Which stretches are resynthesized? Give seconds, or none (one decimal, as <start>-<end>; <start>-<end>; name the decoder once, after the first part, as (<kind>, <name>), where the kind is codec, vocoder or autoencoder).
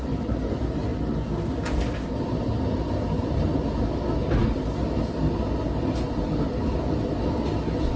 none